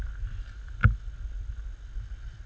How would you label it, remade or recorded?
recorded